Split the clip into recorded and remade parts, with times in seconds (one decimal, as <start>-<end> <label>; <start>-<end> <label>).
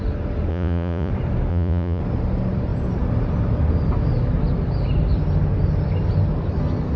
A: 0.0-0.5 recorded; 0.5-1.1 remade; 1.1-1.5 recorded; 1.5-2.0 remade; 2.0-7.0 recorded